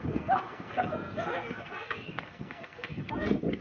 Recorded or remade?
remade